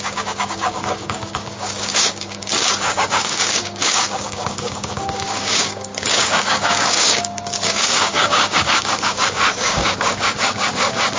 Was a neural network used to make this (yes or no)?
yes